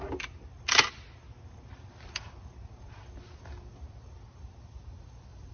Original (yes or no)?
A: yes